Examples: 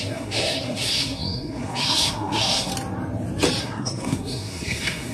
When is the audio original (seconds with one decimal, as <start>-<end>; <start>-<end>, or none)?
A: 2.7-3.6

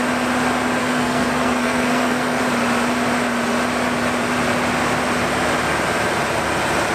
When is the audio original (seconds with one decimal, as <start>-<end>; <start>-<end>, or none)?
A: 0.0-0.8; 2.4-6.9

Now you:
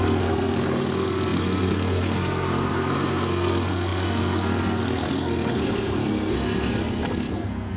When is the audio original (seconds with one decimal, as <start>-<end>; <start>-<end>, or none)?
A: none